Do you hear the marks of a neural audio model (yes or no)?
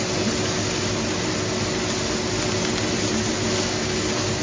no